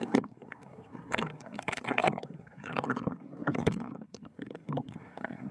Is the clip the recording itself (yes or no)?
no